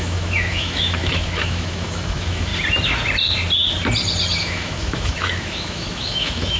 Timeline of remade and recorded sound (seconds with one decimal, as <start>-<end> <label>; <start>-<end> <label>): 0.0-2.5 remade; 2.5-4.4 recorded; 4.4-6.6 remade